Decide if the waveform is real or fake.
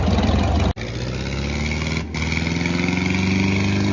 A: real